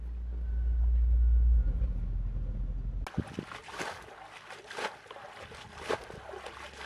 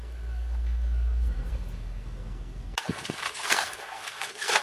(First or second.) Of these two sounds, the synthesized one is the second